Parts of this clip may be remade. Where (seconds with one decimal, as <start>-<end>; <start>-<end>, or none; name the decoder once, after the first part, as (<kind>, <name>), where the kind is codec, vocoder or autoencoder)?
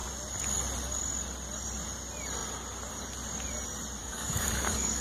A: 4.0-5.0 (codec, DAC)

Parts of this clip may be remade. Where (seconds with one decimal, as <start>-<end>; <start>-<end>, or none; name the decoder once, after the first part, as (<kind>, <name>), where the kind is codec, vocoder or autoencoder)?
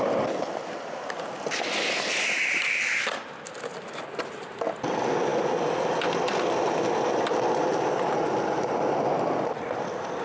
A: none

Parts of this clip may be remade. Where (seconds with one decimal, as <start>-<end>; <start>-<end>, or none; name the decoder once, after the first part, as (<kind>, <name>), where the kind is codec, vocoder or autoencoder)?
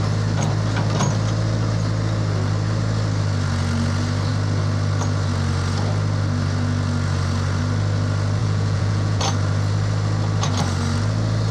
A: 8.4-9.2 (vocoder, Vocos)